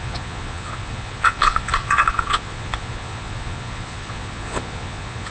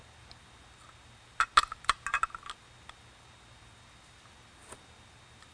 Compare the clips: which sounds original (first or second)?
second